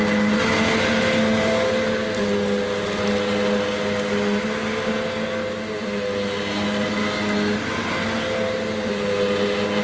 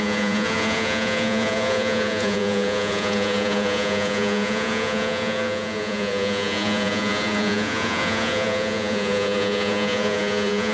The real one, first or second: first